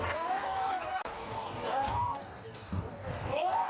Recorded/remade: remade